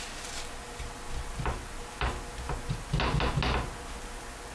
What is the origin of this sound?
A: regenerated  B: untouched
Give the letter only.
B